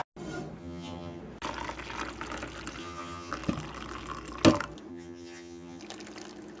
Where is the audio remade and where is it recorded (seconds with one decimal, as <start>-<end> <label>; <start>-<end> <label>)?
0.0-0.6 recorded; 0.6-1.2 remade; 1.2-2.8 recorded; 2.8-3.3 remade; 3.3-4.9 recorded; 4.9-5.8 remade; 5.8-6.6 recorded